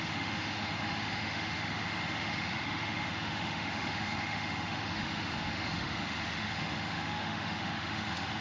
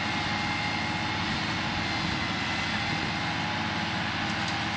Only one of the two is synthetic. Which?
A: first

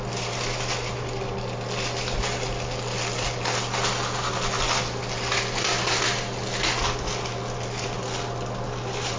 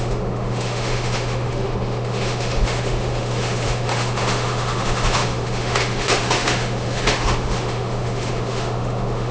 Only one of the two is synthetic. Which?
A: second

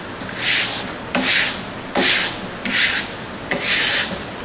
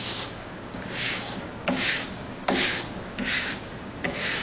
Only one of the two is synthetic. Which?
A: second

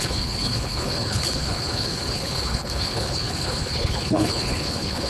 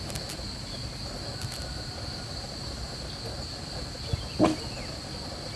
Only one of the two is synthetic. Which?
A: first